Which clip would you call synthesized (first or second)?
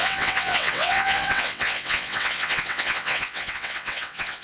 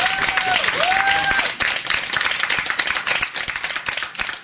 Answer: first